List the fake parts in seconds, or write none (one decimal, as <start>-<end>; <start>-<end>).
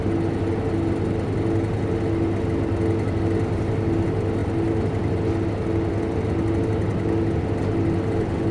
none